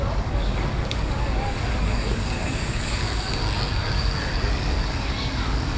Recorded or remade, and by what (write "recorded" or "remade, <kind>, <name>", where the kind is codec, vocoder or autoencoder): remade, codec, DAC